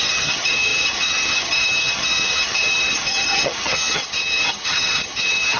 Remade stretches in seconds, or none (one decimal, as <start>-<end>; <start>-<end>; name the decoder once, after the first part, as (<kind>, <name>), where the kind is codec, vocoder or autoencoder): 0.0-5.6 (vocoder, HiFi-GAN)